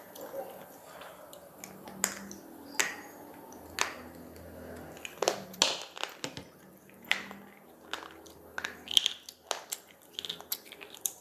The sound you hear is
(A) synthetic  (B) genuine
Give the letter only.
B